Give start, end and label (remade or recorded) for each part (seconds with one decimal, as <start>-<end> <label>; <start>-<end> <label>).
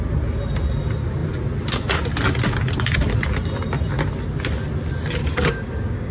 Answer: 0.0-5.2 recorded; 5.2-6.1 remade